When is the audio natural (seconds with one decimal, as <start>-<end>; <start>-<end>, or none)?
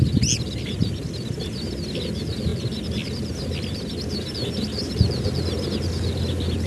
0.0-6.7